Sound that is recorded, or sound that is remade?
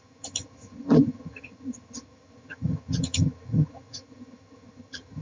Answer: remade